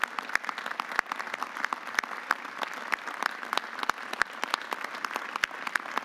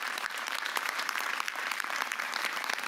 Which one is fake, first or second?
second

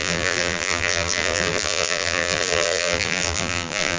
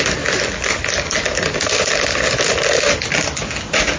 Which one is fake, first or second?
first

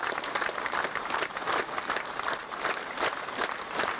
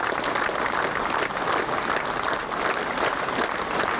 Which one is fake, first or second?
first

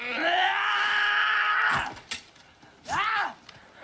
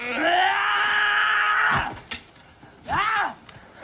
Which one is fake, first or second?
first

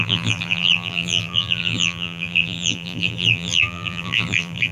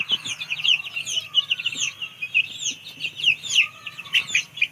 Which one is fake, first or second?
first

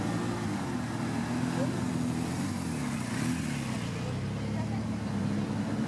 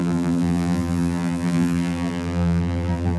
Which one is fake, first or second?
second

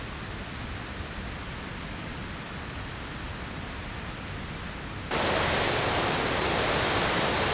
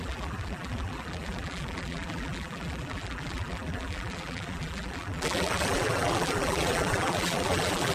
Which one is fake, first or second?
second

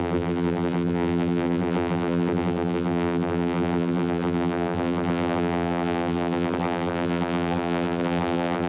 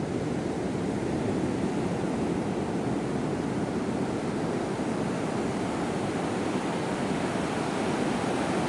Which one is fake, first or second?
first